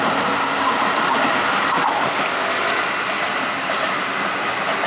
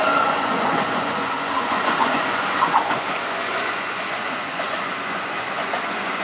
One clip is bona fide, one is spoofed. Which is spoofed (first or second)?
second